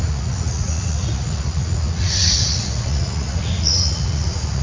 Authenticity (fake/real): fake